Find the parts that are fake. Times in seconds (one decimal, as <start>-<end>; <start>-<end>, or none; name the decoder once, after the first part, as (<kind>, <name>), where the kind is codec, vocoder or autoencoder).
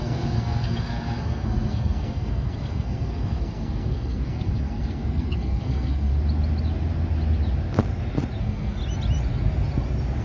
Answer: 0.0-6.1 (codec, SNAC); 8.4-8.8